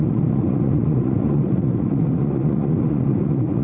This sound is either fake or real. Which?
fake